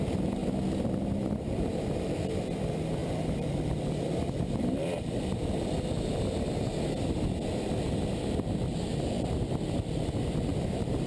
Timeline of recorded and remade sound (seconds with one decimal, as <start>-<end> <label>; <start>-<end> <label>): 0.0-0.4 recorded; 0.4-1.8 remade; 1.8-3.0 recorded; 3.0-5.2 remade; 5.2-10.5 recorded; 10.5-11.1 remade